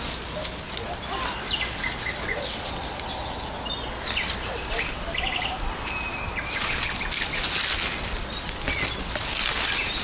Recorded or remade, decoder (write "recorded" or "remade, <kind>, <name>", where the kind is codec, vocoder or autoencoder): recorded